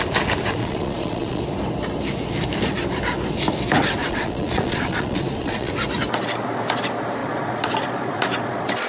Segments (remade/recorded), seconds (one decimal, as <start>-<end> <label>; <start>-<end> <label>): 0.0-0.6 recorded; 0.6-1.4 remade; 1.4-4.0 recorded; 4.0-5.7 remade; 5.7-7.2 recorded; 7.2-8.9 remade